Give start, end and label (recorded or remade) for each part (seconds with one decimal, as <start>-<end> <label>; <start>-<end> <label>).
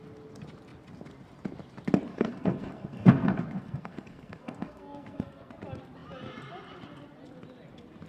0.0-2.1 recorded; 2.1-5.5 remade; 5.5-8.1 recorded